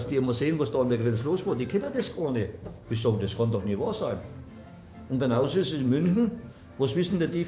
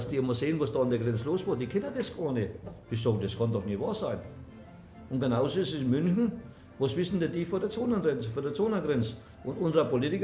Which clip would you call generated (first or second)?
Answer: first